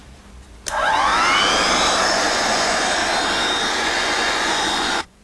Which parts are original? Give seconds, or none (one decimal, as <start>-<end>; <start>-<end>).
0.0-0.7; 1.1-2.0; 3.0-3.7